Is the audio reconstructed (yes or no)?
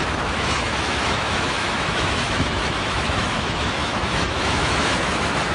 yes